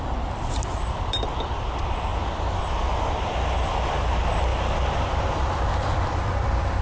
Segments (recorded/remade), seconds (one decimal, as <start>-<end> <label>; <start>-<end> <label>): 0.0-2.1 remade; 2.1-2.6 recorded; 2.6-4.5 remade; 4.5-5.2 recorded; 5.2-6.8 remade